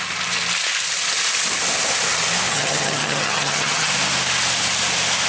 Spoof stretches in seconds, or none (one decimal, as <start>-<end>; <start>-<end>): 2.5-3.9